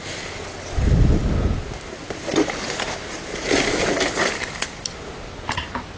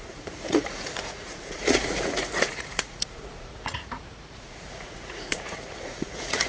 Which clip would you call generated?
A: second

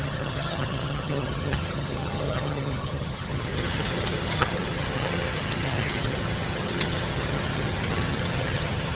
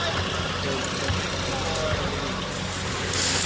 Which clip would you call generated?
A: first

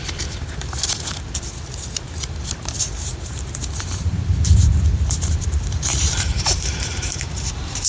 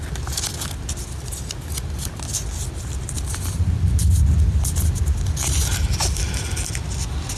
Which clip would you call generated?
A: first